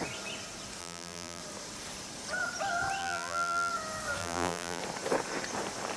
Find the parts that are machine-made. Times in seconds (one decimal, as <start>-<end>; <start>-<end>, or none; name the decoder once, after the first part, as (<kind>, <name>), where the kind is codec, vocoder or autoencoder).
0.8-1.4 (vocoder, BigVGAN v2); 3.0-3.7; 4.2-4.8